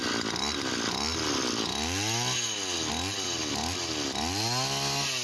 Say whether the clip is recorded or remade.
recorded